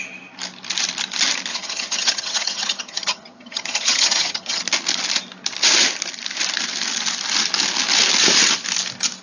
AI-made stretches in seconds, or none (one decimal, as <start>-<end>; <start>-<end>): 1.5-4.6